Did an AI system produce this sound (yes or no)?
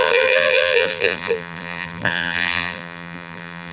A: yes